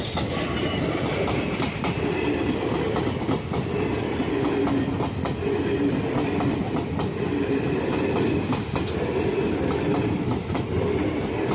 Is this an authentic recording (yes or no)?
yes